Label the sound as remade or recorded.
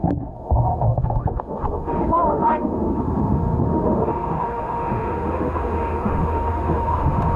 remade